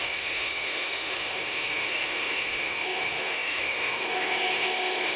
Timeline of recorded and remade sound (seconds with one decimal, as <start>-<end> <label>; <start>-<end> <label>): 0.0-5.2 remade